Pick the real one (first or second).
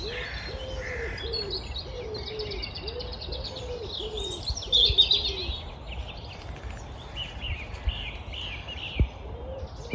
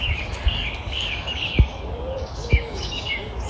first